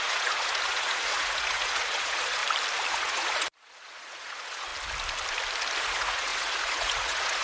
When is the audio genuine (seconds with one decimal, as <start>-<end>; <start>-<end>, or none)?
2.4-2.9; 4.7-5.8